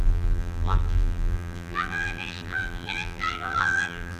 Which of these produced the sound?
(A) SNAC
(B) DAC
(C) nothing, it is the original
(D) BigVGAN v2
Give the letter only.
D